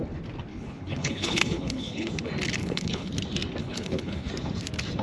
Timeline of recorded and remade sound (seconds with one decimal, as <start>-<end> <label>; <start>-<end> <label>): 0.0-0.5 recorded; 0.5-2.1 remade; 2.1-2.6 recorded; 2.6-3.1 remade; 3.1-3.6 recorded; 3.6-4.3 remade; 4.3-5.0 recorded